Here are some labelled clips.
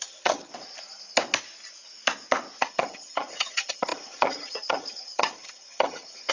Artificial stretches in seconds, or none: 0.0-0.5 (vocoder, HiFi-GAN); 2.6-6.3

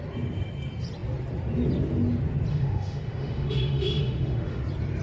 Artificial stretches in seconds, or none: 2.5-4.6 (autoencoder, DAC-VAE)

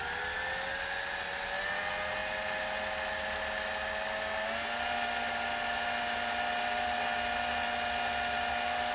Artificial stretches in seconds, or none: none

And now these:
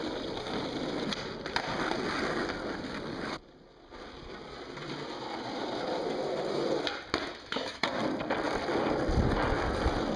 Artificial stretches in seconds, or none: 7.3-7.9 (autoencoder, DAC-VAE)

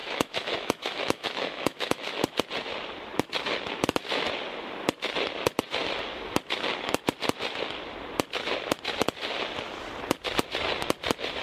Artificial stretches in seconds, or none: 0.0-2.2 (autoencoder, DAC-VAE)